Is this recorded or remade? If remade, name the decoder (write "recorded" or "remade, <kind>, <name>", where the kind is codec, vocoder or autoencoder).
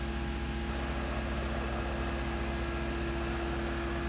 recorded